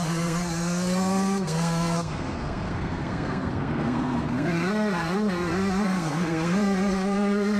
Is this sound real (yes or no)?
no